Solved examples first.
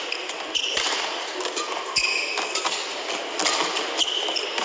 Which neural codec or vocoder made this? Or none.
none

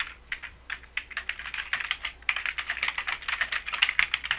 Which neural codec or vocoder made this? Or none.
none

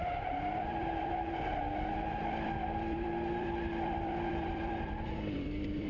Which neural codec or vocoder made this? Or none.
vocoder, BigVGAN v2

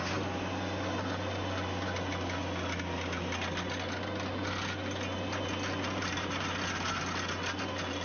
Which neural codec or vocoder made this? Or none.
none